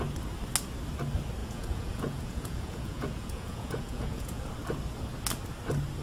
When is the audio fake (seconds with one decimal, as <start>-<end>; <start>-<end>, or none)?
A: 1.4-4.4

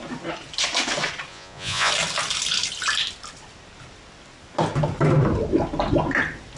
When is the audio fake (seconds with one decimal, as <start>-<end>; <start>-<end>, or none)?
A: 1.3-1.9

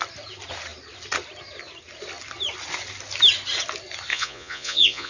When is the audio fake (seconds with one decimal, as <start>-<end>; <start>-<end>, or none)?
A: 4.1-5.1

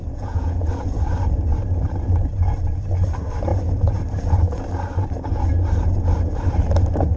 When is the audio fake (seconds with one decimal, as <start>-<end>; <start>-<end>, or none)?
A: 0.0-0.7; 3.5-4.0

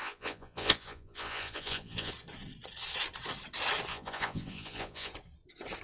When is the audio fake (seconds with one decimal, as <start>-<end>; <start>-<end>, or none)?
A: 0.0-2.1; 3.9-5.1